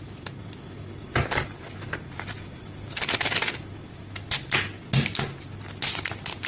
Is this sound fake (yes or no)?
no